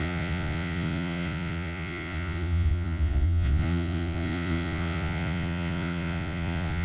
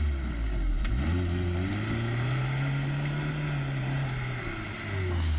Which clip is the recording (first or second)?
second